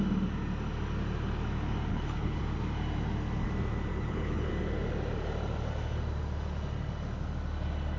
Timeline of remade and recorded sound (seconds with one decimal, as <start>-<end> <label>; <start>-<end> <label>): 0.0-1.9 recorded; 1.9-2.4 remade; 2.4-3.9 recorded; 3.9-4.5 remade; 4.5-8.0 recorded